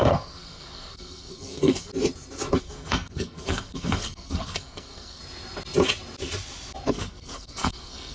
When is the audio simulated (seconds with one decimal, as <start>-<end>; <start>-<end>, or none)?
0.0-1.9; 2.6-5.2; 6.9-8.1